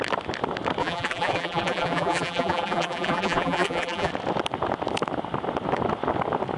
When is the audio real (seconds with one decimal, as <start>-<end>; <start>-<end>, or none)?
0.0-0.8; 4.1-6.6